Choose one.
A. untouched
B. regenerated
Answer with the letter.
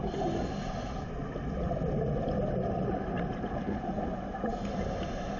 A